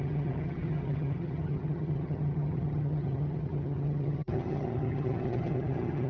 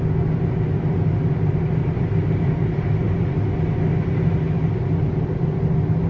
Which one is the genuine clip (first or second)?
second